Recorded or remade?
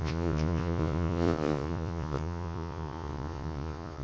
remade